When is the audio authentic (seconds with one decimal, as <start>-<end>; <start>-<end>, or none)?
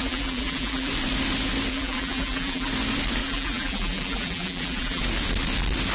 0.9-1.7; 2.7-3.2; 5.0-5.9